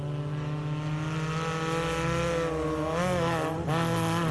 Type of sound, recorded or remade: recorded